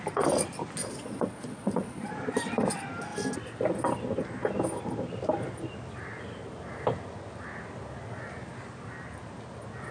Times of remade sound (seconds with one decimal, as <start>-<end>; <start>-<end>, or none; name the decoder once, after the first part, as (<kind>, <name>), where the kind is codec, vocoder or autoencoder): 0.8-2.1 (vocoder, Vocos)